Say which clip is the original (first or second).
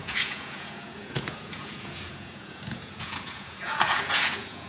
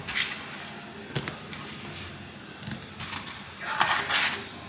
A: second